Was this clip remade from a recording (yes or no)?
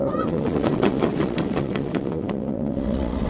yes